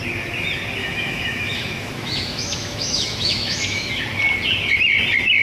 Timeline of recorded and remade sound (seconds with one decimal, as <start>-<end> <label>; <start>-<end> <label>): 0.0-0.8 recorded; 0.8-4.0 remade; 4.0-5.4 recorded